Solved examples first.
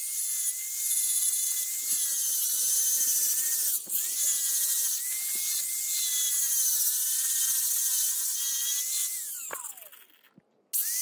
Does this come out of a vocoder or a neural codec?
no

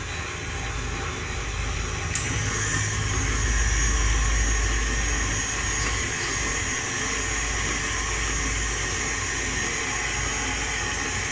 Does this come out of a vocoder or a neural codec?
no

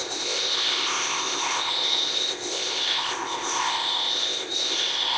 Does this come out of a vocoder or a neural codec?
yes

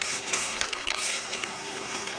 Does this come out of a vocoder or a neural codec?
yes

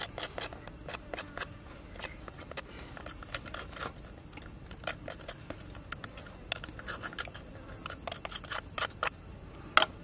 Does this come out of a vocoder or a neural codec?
no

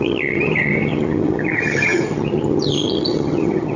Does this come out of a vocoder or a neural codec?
yes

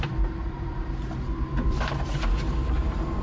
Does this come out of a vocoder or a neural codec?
yes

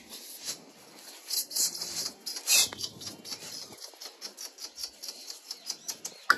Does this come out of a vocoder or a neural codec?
no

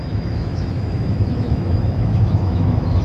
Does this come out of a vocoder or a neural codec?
yes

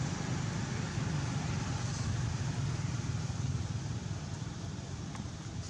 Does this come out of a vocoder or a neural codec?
yes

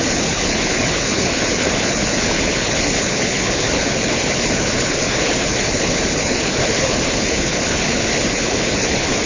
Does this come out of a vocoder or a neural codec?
yes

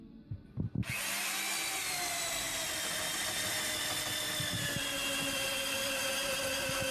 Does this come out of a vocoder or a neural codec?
no